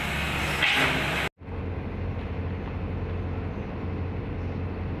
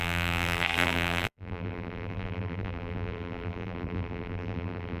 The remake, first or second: second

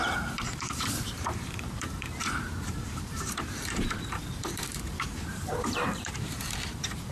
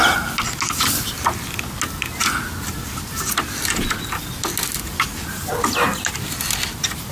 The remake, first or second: first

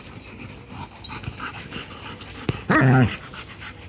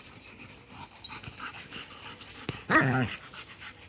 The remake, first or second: second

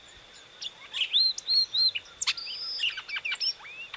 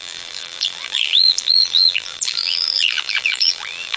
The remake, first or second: second